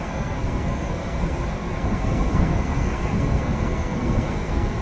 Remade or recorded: remade